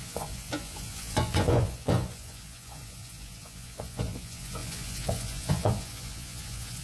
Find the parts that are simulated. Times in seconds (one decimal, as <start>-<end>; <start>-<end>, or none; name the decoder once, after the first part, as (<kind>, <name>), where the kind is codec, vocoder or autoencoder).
0.0-6.8 (vocoder, Vocos)